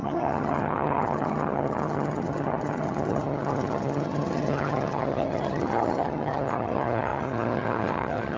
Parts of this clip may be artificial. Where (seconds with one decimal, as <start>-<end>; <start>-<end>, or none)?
0.0-8.4